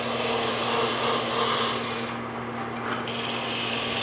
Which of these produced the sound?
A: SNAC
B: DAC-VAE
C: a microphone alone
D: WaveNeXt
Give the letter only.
C